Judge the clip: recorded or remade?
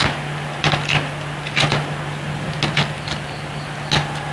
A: recorded